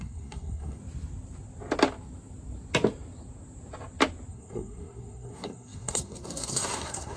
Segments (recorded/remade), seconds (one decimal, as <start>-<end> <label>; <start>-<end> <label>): 0.0-0.8 remade; 0.8-4.3 recorded; 4.3-7.2 remade